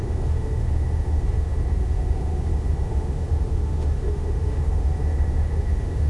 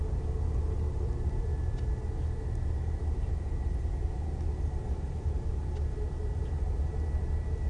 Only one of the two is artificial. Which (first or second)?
first